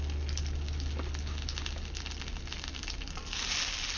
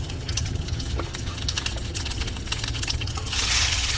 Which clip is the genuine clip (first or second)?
first